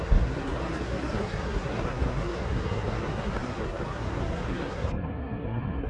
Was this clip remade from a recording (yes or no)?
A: yes